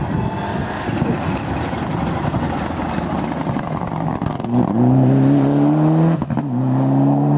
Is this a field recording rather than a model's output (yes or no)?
yes